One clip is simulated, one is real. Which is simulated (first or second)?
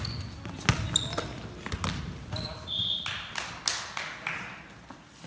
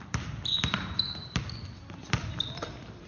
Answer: second